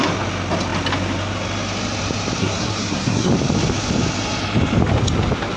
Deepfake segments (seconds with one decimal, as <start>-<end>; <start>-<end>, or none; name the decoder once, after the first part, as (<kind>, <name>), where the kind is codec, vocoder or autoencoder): 2.4-3.3 (codec, SNAC)